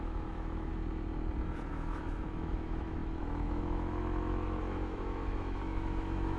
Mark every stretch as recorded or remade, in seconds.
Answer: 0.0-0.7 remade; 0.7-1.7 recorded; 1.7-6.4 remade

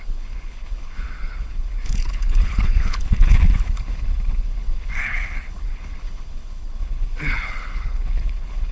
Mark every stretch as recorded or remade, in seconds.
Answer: 0.0-8.7 remade

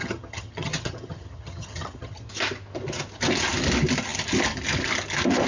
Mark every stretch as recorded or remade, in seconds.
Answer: 0.0-2.3 remade; 2.3-5.5 recorded

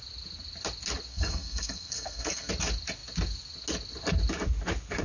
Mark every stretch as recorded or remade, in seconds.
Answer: 0.0-1.1 recorded; 1.1-2.5 remade; 2.5-5.0 recorded

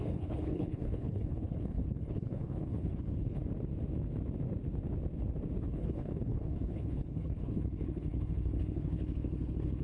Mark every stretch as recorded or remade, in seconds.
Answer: 0.0-3.4 remade; 3.4-5.6 recorded; 5.6-9.8 remade